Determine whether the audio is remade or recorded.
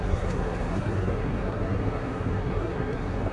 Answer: remade